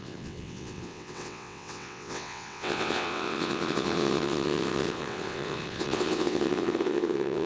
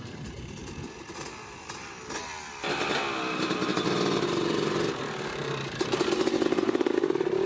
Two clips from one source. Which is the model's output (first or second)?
first